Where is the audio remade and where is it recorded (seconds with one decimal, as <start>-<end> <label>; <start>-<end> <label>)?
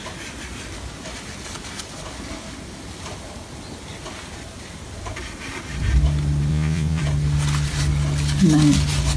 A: 0.0-6.5 recorded; 6.5-7.0 remade; 7.0-9.2 recorded